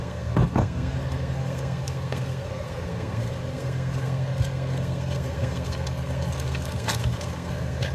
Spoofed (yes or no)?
yes